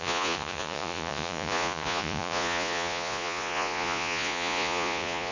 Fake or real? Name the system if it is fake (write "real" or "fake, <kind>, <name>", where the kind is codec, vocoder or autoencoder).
fake, vocoder, Vocos